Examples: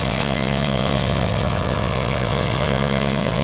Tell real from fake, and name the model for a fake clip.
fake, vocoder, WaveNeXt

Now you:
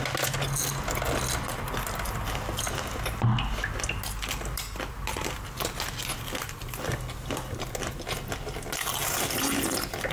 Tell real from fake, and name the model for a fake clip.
real